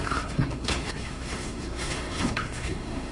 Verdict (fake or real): fake